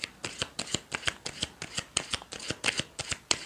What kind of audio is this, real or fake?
fake